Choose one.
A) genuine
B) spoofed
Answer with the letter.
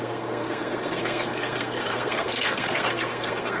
B